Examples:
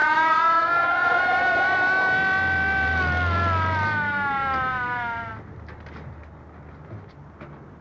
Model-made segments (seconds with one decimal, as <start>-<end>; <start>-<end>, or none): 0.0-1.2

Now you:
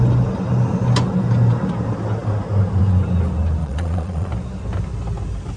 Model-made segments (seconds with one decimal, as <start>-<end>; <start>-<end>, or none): 3.6-4.3

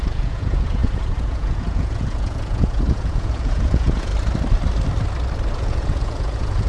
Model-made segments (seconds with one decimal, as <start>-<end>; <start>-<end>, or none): 0.0-4.1; 5.5-6.7